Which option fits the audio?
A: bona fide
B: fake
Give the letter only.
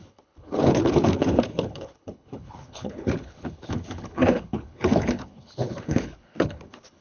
B